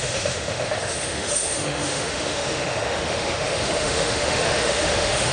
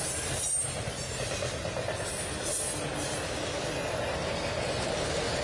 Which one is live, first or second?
second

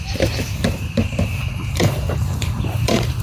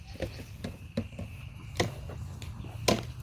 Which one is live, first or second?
second